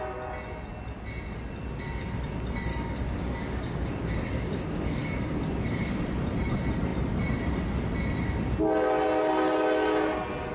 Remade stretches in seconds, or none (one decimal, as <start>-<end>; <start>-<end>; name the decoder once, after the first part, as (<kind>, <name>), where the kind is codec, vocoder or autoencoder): 2.7-5.9 (codec, DAC)